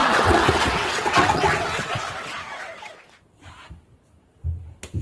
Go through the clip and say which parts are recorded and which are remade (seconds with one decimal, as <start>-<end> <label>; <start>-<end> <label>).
0.0-3.0 remade; 3.0-5.0 recorded

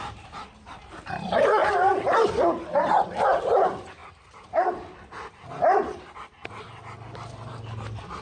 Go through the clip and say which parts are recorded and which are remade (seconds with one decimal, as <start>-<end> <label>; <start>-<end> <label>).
0.0-4.0 remade; 4.0-8.2 recorded

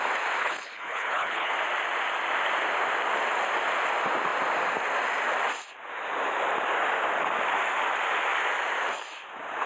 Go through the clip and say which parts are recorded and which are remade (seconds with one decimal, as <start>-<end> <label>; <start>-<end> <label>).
0.0-0.4 recorded; 0.4-1.5 remade; 1.5-9.7 recorded

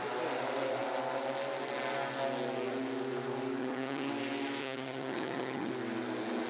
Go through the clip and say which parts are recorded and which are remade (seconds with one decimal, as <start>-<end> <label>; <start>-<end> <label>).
0.0-3.6 recorded; 3.6-4.1 remade; 4.1-4.6 recorded; 4.6-5.7 remade; 5.7-6.5 recorded

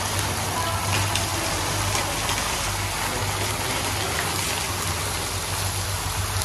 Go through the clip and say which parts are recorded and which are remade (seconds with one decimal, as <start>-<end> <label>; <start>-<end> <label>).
0.0-6.4 recorded

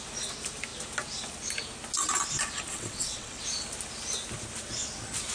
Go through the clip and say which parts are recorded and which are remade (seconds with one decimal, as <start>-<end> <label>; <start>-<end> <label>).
0.0-2.7 recorded; 2.7-3.4 remade; 3.4-5.3 recorded

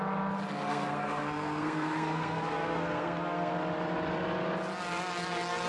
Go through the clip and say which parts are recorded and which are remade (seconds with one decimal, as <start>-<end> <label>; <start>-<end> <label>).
0.0-0.7 recorded; 0.7-3.5 remade; 3.5-5.7 recorded